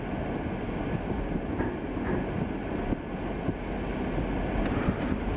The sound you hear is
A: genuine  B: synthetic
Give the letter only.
A